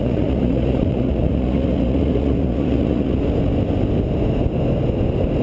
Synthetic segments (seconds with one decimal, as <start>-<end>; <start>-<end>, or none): 0.0-3.2